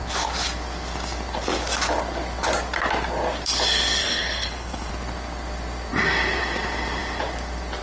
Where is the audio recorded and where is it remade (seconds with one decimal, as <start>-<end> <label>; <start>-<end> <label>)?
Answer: 0.0-4.0 recorded; 4.0-4.9 remade; 4.9-7.8 recorded